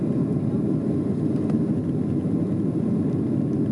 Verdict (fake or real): real